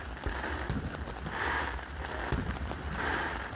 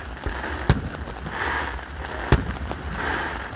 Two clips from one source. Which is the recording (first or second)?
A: second